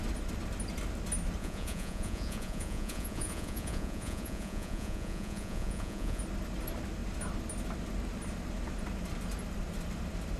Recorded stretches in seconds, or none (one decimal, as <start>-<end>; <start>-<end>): 0.0-1.4; 6.2-10.4

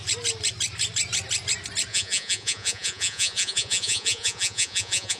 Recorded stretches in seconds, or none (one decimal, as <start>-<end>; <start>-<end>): 0.0-1.9